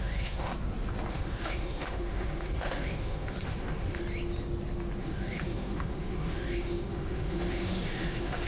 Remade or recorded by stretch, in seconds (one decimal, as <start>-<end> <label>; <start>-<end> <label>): 0.0-0.5 remade; 0.5-1.1 recorded; 1.1-4.0 remade; 4.0-5.0 recorded; 5.0-8.5 remade